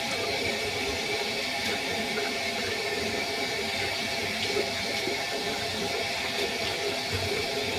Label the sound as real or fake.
fake